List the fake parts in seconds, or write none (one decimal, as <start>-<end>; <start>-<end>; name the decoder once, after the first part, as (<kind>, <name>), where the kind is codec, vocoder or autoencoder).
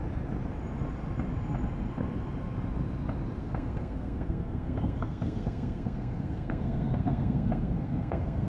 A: 3.4-8.5 (codec, SNAC)